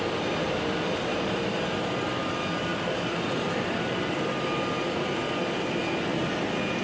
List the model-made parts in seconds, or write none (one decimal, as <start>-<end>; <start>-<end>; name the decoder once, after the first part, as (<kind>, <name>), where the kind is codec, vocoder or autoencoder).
1.1-2.2 (vocoder, BigVGAN v2); 2.7-4.0